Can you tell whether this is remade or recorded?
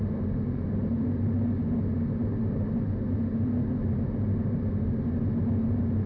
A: recorded